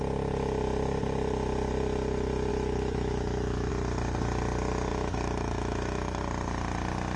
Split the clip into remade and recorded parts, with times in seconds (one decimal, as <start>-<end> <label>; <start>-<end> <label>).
0.0-2.5 recorded; 2.5-3.7 remade; 3.7-4.9 recorded; 4.9-6.2 remade; 6.2-7.2 recorded